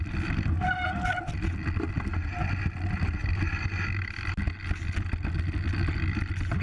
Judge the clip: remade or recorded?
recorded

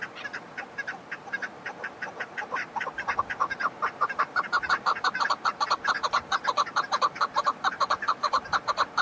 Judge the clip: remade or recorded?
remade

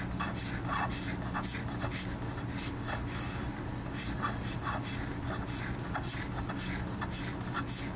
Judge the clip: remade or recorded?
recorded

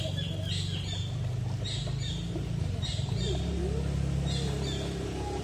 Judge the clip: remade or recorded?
recorded